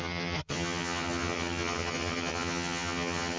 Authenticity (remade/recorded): remade